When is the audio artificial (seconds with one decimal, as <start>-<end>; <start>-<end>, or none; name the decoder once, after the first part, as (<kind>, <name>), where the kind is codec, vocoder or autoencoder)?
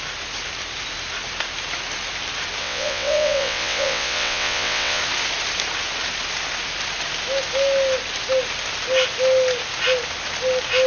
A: 2.6-5.0 (vocoder, WaveNeXt)